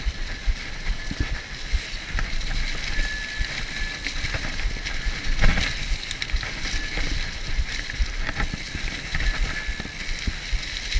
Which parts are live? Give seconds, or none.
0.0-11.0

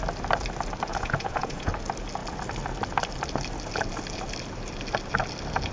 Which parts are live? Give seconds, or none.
0.0-0.9; 1.7-5.7

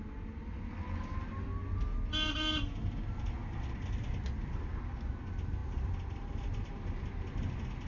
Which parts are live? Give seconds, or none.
0.0-7.9

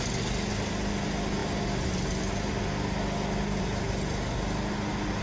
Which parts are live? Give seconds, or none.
0.0-5.2

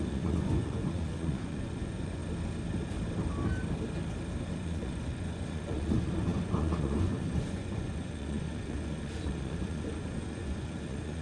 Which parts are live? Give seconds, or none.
2.2-4.5

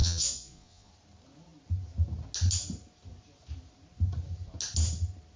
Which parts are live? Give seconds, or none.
0.9-5.4